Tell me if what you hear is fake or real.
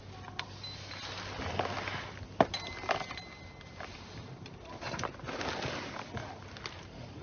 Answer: real